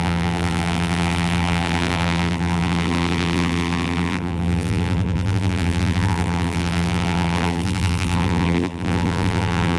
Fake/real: fake